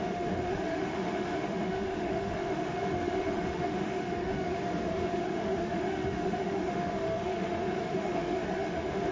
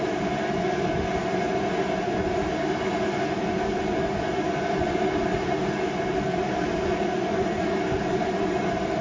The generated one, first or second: first